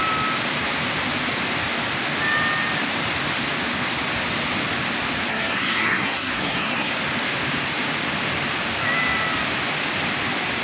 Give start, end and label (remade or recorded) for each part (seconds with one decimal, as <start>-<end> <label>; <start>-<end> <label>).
0.0-5.3 recorded; 5.3-6.9 remade; 6.9-10.6 recorded